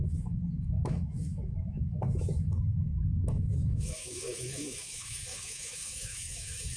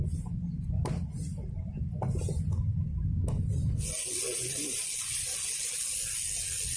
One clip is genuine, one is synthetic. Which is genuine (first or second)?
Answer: second